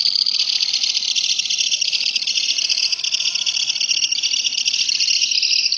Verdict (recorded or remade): recorded